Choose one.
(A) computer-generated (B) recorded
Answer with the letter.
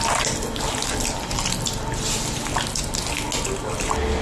B